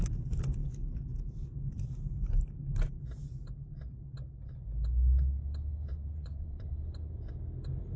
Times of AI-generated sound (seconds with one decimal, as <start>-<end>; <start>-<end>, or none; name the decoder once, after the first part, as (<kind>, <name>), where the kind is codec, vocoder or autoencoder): 5.9-6.7 (vocoder, Vocos)